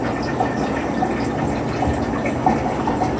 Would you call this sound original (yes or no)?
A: yes